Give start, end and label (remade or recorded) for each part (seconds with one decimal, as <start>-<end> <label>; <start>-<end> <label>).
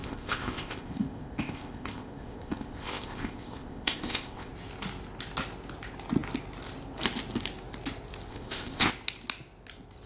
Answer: 0.0-4.5 remade; 4.5-8.3 recorded; 8.3-8.9 remade; 8.9-10.1 recorded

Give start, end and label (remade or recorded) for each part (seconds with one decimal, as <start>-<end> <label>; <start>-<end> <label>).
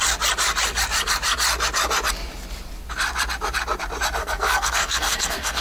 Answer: 0.0-4.2 recorded; 4.2-5.6 remade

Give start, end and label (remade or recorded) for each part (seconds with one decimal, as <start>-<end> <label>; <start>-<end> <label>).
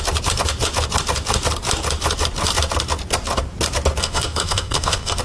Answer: 0.0-4.0 recorded; 4.0-5.2 remade